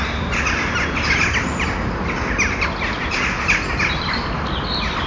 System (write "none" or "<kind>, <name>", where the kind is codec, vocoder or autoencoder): none